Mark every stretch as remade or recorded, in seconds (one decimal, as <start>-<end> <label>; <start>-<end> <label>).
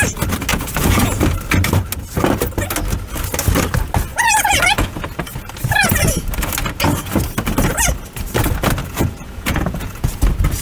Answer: 0.0-0.5 recorded; 0.5-1.2 remade; 1.2-4.1 recorded; 4.1-5.0 remade; 5.0-8.8 recorded; 8.8-10.2 remade; 10.2-10.6 recorded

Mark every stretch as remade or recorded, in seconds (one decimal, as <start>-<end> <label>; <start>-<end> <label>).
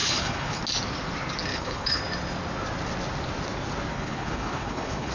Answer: 0.0-0.6 remade; 0.6-1.5 recorded; 1.5-2.0 remade; 2.0-3.9 recorded; 3.9-5.1 remade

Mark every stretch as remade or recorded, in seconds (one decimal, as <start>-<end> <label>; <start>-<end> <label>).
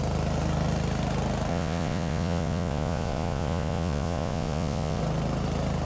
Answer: 0.0-1.5 recorded; 1.5-5.0 remade; 5.0-5.9 recorded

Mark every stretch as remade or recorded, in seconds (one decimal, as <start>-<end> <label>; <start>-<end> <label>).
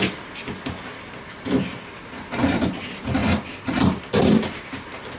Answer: 0.0-1.7 remade; 1.7-2.4 recorded; 2.4-3.2 remade; 3.2-4.0 recorded; 4.0-5.2 remade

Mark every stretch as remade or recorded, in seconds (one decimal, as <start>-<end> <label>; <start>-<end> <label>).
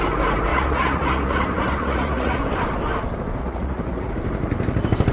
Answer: 0.0-0.5 recorded; 0.5-2.4 remade; 2.4-3.4 recorded; 3.4-4.1 remade; 4.1-5.1 recorded